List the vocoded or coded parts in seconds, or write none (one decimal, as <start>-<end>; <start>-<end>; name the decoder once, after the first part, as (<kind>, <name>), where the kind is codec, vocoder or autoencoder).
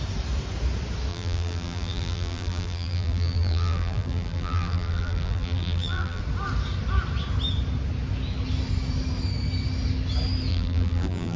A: 1.1-6.2 (vocoder, BigVGAN v2); 10.5-11.4